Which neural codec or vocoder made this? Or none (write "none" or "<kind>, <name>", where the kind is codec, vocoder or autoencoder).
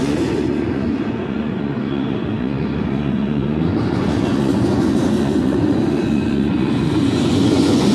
vocoder, Vocos